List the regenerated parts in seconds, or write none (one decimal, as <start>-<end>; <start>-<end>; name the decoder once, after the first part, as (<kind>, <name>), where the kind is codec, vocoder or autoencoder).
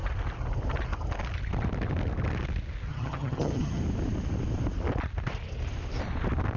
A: 2.9-3.8 (vocoder, HiFi-GAN)